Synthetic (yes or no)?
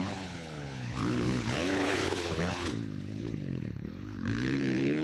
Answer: yes